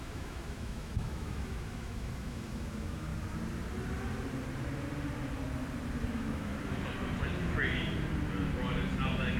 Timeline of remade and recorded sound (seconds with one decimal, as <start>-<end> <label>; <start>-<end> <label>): 0.0-3.1 remade; 3.1-6.1 recorded; 6.1-6.5 remade; 6.5-9.4 recorded